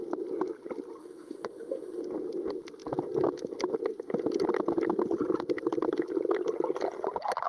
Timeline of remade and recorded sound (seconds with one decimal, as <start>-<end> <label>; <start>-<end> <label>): 0.0-1.0 recorded; 1.0-2.0 remade; 2.0-7.5 recorded